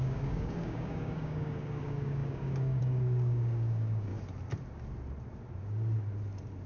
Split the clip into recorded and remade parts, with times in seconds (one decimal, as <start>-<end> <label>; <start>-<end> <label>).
0.0-4.1 remade; 4.1-6.7 recorded